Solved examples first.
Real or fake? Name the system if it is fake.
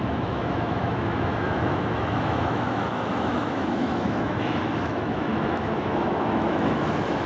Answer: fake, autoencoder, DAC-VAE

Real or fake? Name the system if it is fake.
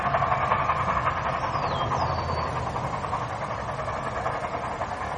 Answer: real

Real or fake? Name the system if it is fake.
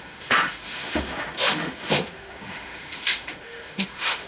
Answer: fake, autoencoder, DAC-VAE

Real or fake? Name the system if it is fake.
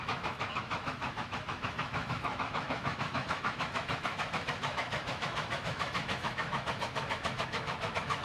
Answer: fake, autoencoder, DAC-VAE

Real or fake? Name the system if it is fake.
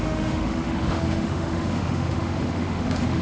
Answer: fake, autoencoder, DAC-VAE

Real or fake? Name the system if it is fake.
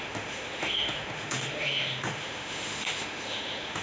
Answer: fake, autoencoder, DAC-VAE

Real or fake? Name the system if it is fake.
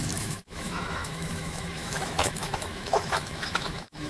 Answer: fake, autoencoder, DAC-VAE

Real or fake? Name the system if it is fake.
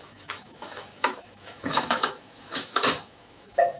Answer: fake, autoencoder, DAC-VAE